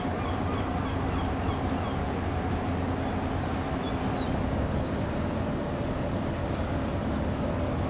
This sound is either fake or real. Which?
real